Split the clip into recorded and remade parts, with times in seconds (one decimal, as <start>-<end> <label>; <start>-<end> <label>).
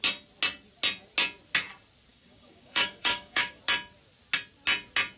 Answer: 0.0-2.1 recorded; 2.1-3.6 remade; 3.6-5.2 recorded